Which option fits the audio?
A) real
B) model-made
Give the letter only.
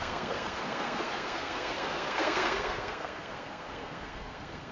B